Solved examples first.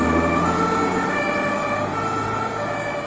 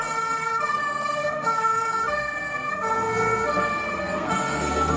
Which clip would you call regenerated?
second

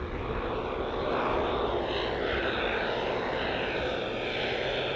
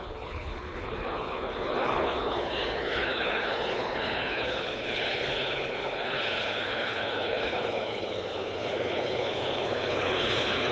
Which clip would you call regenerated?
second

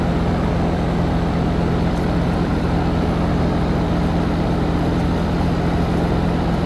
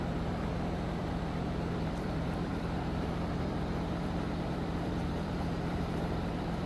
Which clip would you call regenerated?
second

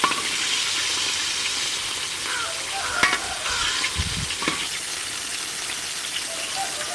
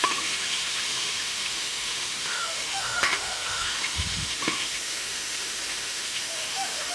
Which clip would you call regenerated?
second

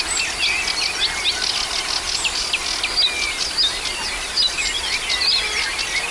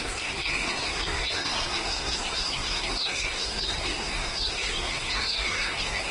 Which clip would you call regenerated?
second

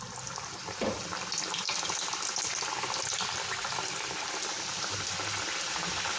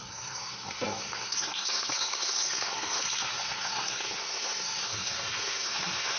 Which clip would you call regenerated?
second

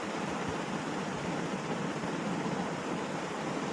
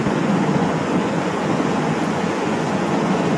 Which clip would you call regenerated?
second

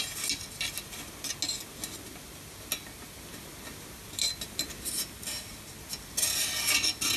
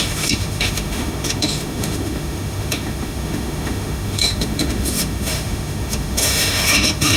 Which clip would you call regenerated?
second